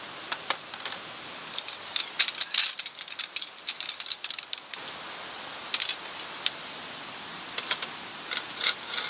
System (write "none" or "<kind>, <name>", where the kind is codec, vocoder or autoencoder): none